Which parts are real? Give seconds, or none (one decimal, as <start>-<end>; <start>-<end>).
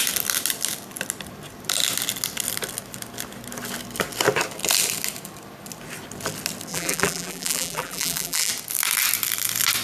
0.0-6.7; 8.5-9.8